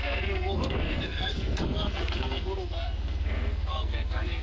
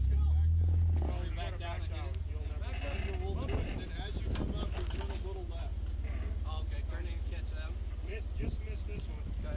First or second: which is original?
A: second